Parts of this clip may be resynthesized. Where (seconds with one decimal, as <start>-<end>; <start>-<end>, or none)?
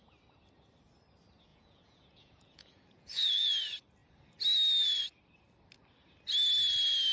1.5-3.5